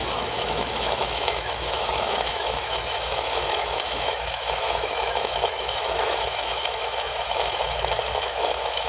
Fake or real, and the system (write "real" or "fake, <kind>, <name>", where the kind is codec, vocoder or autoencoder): fake, autoencoder, DAC-VAE